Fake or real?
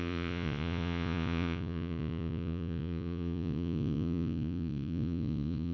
fake